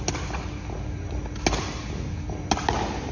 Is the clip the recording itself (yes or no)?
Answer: yes